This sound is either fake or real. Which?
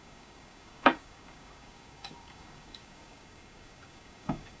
fake